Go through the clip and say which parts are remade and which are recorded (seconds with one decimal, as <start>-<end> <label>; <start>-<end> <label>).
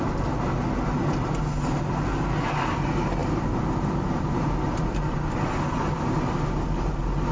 0.0-7.3 recorded